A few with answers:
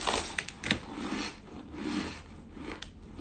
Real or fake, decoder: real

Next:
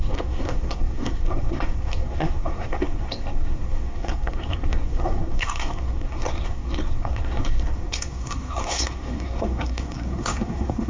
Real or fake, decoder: fake, codec, SNAC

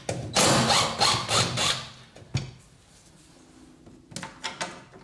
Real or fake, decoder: real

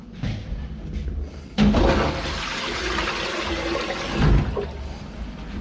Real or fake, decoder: real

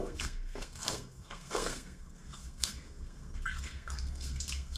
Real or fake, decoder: fake, codec, SNAC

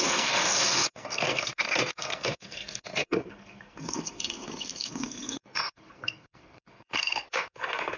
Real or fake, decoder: fake, codec, SNAC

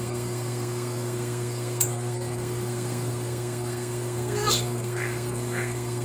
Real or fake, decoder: fake, codec, SNAC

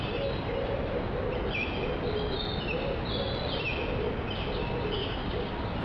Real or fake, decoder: real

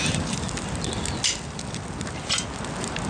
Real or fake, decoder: real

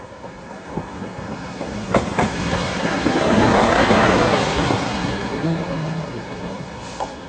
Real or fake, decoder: fake, codec, SNAC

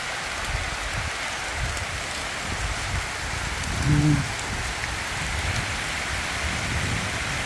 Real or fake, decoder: real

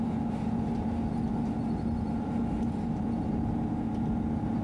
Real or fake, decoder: real